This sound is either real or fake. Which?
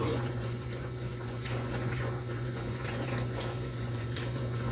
fake